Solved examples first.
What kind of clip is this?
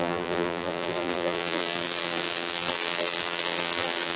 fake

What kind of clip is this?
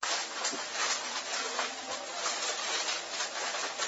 fake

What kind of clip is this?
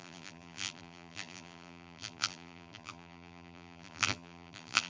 fake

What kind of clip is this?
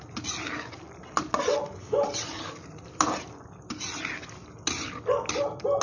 real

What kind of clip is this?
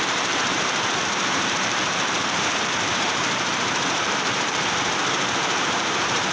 fake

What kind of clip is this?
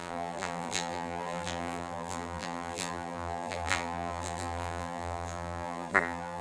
fake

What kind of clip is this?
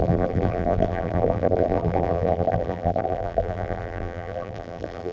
fake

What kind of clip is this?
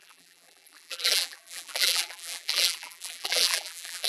fake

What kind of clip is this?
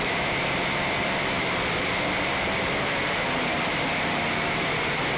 fake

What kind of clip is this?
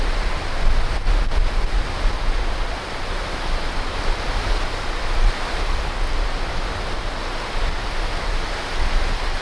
real